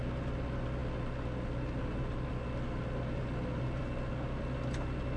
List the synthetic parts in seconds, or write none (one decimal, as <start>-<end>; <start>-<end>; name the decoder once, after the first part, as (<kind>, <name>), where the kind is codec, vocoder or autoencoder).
none